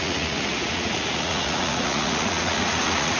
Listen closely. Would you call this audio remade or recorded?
remade